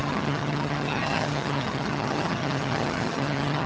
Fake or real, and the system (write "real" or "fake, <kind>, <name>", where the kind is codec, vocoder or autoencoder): fake, vocoder, HiFi-GAN